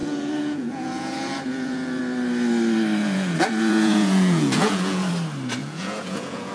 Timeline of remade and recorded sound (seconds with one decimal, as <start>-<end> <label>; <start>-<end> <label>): 0.0-2.0 remade; 2.0-3.0 recorded; 3.0-5.1 remade; 5.1-5.6 recorded; 5.6-6.5 remade

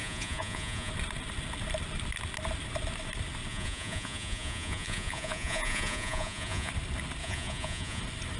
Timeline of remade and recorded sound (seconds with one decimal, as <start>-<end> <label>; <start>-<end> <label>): 0.0-0.9 remade; 0.9-3.5 recorded; 3.5-6.7 remade; 6.7-7.2 recorded; 7.2-8.0 remade; 8.0-8.4 recorded

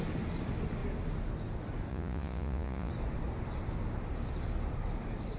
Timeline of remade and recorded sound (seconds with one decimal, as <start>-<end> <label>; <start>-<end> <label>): 0.0-1.9 recorded; 1.9-2.9 remade; 2.9-5.4 recorded

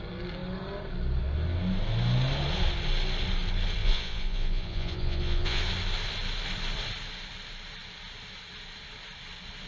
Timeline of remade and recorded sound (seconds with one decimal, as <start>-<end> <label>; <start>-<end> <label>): 0.0-3.8 recorded; 3.8-5.6 remade; 5.6-9.7 recorded

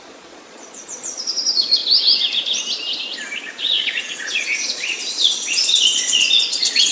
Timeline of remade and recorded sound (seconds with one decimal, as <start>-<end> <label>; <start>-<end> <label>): 0.0-1.8 remade; 1.8-3.4 recorded; 3.4-6.9 remade

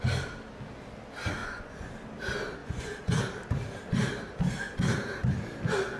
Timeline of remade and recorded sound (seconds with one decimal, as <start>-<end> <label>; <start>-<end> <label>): 0.0-1.4 recorded; 1.4-1.9 remade; 1.9-2.6 recorded; 2.6-3.2 remade; 3.2-6.0 recorded

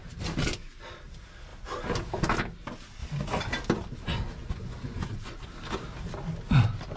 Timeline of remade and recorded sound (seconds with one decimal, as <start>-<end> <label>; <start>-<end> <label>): 0.0-4.4 recorded; 4.4-5.4 remade; 5.4-7.0 recorded